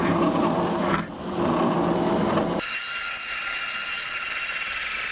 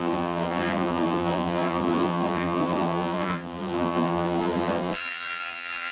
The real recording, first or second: first